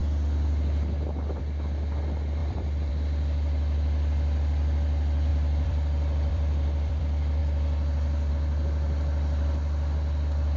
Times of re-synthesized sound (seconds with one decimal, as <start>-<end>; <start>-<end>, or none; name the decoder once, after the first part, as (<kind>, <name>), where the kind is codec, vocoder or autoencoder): 2.4-2.9 (vocoder, BigVGAN v2); 5.3-7.0